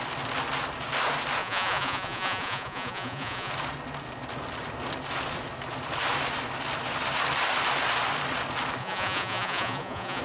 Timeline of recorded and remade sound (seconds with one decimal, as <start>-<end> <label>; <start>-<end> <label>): 0.0-1.4 recorded; 1.4-3.5 remade; 3.5-8.8 recorded; 8.8-10.2 remade